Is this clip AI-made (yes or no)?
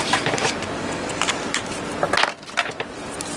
no